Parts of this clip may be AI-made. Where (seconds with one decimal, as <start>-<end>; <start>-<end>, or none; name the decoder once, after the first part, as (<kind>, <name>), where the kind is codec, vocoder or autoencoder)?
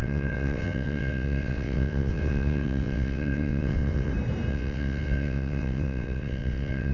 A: 0.0-4.1 (vocoder, WaveNeXt); 4.5-6.9